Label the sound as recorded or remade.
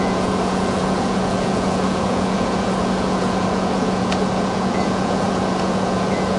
remade